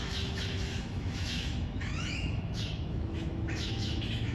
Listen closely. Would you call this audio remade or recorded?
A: remade